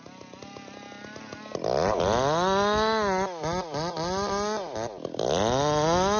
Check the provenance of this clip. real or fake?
real